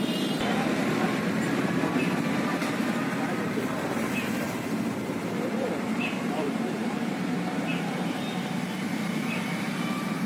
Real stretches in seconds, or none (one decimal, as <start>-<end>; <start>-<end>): 7.7-8.3